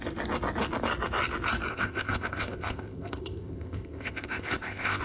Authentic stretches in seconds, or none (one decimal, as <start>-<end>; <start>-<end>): 0.0-1.7